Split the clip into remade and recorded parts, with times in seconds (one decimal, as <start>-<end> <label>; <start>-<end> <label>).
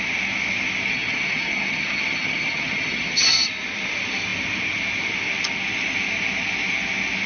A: 0.0-0.9 recorded; 0.9-3.5 remade; 3.5-7.3 recorded